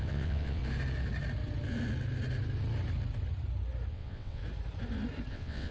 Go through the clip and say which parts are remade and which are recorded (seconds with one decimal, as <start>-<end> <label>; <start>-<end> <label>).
0.0-0.6 remade; 0.6-3.9 recorded; 3.9-4.4 remade; 4.4-5.3 recorded; 5.3-5.7 remade

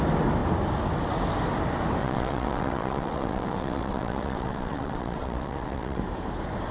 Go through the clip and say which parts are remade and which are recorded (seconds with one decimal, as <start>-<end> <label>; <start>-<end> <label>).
0.0-2.0 recorded; 2.0-6.0 remade; 6.0-6.7 recorded

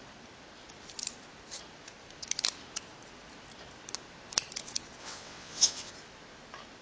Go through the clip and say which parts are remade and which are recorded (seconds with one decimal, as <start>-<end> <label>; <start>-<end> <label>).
0.0-5.0 recorded; 5.0-5.9 remade; 5.9-6.8 recorded

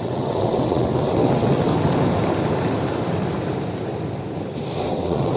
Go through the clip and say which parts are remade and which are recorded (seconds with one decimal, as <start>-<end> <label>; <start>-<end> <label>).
0.0-1.7 remade; 1.7-4.9 recorded; 4.9-5.4 remade